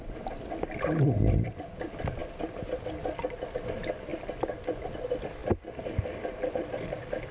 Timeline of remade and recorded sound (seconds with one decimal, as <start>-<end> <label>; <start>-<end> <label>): 0.0-7.3 recorded